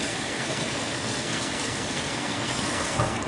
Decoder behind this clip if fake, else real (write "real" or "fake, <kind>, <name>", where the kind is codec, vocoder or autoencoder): fake, codec, SNAC